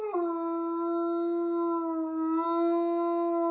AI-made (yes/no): no